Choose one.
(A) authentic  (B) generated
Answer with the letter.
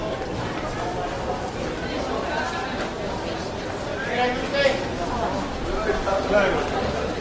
A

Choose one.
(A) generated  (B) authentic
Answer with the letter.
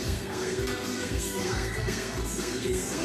A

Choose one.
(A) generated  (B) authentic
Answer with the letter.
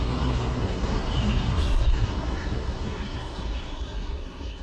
A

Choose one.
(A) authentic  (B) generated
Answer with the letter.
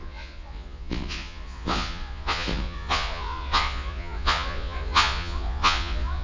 B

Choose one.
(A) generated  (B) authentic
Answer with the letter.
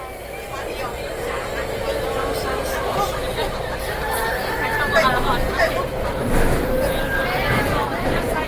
B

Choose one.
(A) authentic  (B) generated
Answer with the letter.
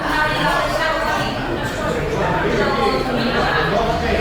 B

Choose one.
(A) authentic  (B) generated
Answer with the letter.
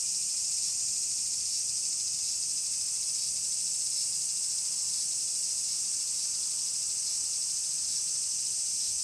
A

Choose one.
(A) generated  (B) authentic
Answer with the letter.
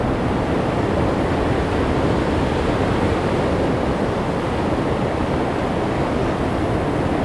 B